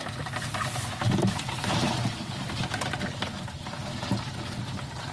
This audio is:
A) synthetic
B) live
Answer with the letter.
B